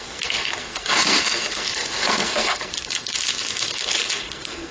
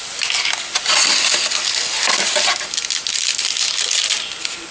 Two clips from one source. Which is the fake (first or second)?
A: first